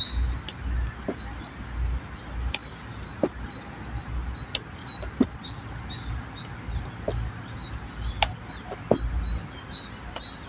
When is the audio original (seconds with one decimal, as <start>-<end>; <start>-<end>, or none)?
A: 0.0-10.5